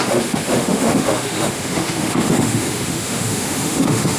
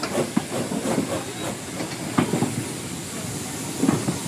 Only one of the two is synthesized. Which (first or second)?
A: first